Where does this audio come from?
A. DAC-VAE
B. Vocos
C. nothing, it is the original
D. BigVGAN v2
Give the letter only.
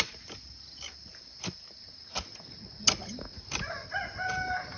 C